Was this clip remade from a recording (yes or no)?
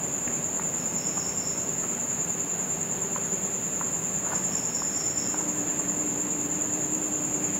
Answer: yes